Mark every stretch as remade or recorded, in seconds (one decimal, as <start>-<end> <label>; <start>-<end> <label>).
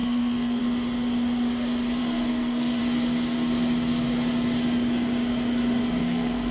0.0-0.6 remade; 0.6-2.0 recorded; 2.0-2.8 remade; 2.8-6.0 recorded; 6.0-6.5 remade